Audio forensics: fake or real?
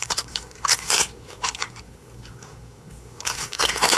fake